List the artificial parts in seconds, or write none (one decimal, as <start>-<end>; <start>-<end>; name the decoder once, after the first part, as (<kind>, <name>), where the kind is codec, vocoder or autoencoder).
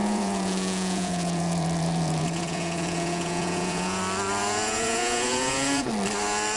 0.0-4.0 (vocoder, Vocos); 4.4-5.9